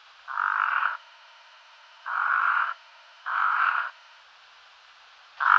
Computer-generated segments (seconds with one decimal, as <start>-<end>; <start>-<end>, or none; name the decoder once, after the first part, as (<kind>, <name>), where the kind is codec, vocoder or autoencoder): 0.8-4.2 (autoencoder, DAC-VAE)